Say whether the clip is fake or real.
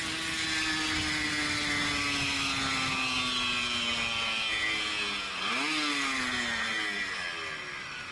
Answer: real